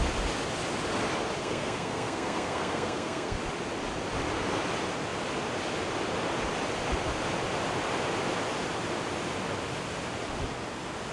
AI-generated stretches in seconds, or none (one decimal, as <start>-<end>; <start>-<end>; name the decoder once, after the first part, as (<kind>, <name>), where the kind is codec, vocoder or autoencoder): 1.4-3.4 (codec, SNAC)